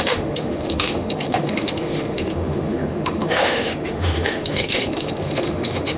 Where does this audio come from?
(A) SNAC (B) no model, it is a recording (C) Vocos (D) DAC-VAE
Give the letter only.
D